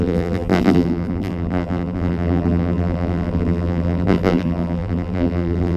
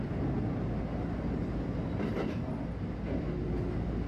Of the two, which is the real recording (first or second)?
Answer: second